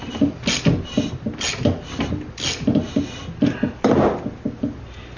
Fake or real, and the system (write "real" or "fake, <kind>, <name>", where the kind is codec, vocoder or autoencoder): real